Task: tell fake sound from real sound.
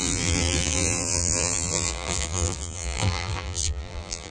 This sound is fake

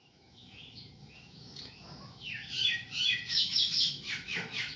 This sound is fake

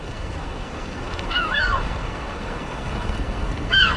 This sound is fake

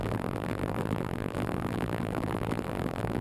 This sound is fake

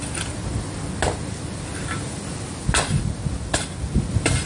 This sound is real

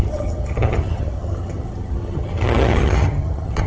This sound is fake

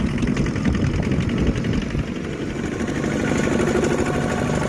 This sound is real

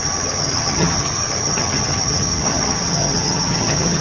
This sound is fake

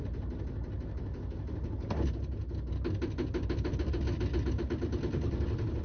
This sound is real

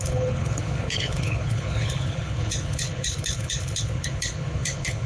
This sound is fake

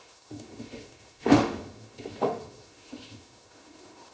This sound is fake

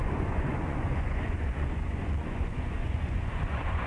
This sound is fake